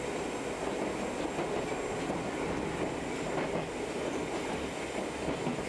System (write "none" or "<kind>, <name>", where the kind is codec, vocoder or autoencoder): none